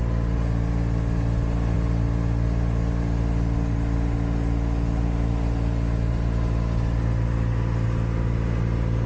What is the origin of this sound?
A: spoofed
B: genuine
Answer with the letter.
B